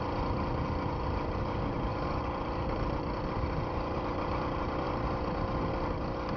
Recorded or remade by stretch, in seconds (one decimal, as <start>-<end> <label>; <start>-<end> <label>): 0.0-1.9 recorded; 1.9-5.7 remade; 5.7-6.4 recorded